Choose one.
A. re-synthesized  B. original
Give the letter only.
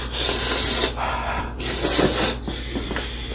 B